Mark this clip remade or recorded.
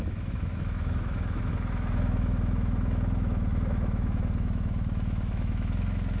remade